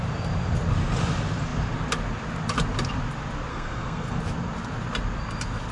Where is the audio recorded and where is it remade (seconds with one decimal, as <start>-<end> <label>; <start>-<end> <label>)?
0.0-3.5 recorded; 3.5-4.2 remade; 4.2-5.7 recorded